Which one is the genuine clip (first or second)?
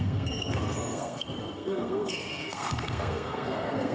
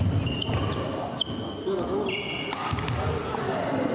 second